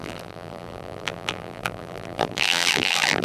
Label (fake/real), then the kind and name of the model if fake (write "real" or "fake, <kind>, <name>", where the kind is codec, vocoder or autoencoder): fake, vocoder, BigVGAN v2